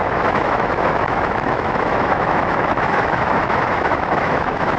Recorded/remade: remade